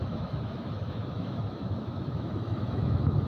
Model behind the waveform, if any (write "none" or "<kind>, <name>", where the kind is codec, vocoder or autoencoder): autoencoder, DAC-VAE